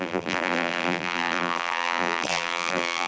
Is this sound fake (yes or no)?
yes